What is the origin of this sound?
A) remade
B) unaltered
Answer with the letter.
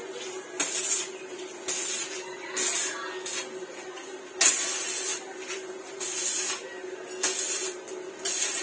B